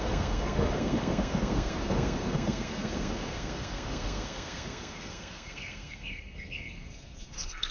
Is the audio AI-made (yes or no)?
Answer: yes